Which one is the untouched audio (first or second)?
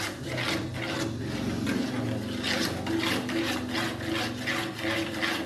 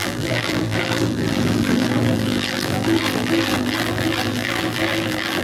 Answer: first